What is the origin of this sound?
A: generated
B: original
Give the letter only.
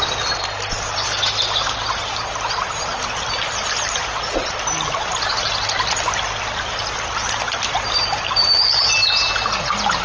B